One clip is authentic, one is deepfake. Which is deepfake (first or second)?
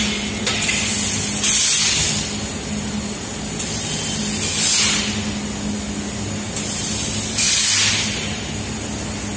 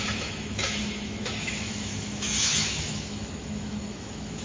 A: second